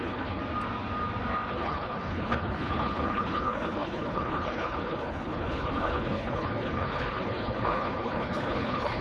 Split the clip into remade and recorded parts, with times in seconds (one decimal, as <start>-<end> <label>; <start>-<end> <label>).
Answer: 0.0-0.4 remade; 0.4-1.5 recorded; 1.5-9.0 remade